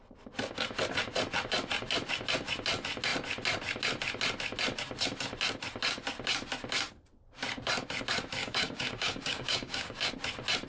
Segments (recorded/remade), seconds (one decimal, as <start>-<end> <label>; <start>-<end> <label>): 0.0-8.4 recorded; 8.4-10.1 remade; 10.1-10.7 recorded